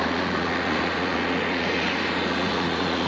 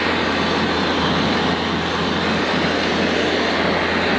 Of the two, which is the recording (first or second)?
second